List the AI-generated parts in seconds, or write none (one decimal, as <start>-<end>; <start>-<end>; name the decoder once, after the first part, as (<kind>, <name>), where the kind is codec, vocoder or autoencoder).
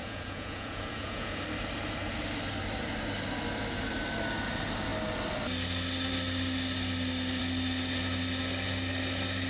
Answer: 0.0-1.4 (vocoder, Vocos)